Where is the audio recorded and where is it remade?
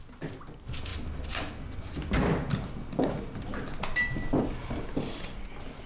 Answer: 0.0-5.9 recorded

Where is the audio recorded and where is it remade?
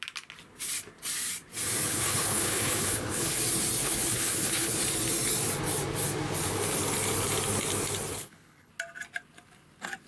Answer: 0.0-1.9 recorded; 1.9-3.4 remade; 3.4-3.8 recorded; 3.8-4.8 remade; 4.8-8.1 recorded; 8.1-8.7 remade; 8.7-10.1 recorded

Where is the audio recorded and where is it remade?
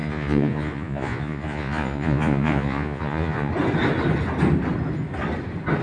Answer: 0.0-3.5 remade; 3.5-5.8 recorded